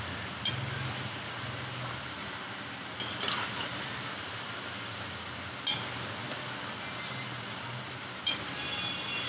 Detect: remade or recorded recorded